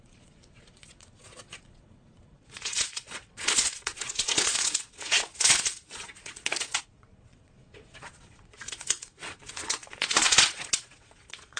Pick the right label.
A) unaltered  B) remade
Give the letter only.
B